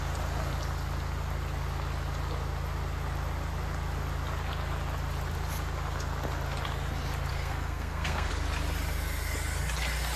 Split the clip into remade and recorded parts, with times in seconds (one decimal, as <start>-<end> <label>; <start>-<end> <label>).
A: 0.0-7.3 recorded; 7.3-8.3 remade; 8.3-10.2 recorded